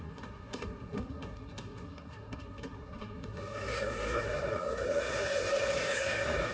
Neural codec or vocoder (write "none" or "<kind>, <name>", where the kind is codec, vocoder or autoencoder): codec, SNAC